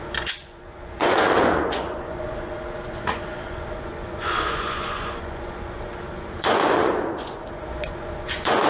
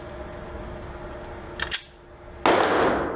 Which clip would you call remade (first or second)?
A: first